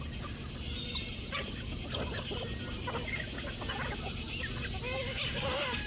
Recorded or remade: recorded